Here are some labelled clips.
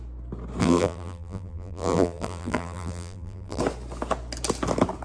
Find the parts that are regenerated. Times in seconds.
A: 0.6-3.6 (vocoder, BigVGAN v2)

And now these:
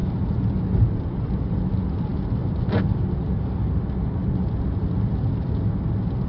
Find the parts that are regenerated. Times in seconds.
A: none

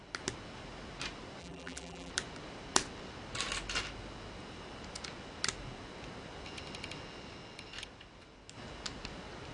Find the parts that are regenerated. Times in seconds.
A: 1.4-2.1 (vocoder, BigVGAN v2)

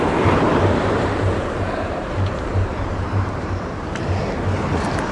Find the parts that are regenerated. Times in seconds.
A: 0.5-3.6 (vocoder, BigVGAN v2)

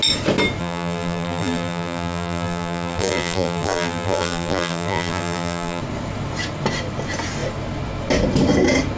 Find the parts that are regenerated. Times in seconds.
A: 0.6-5.8 (vocoder, BigVGAN v2)

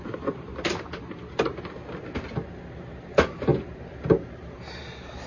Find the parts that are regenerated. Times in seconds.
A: 0.0-0.5 (vocoder, BigVGAN v2); 2.7-3.5; 4.3-5.3

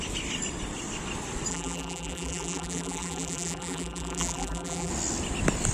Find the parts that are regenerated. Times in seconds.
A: 1.5-4.9 (vocoder, BigVGAN v2)

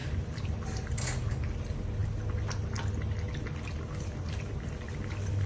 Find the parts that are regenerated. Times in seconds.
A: 0.0-0.5 (vocoder, BigVGAN v2)